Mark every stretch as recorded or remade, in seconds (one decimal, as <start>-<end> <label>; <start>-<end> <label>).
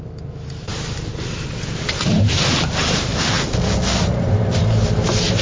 0.0-3.1 remade; 3.1-4.0 recorded; 4.0-5.4 remade